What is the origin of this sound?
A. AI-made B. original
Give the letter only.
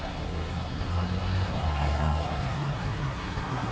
A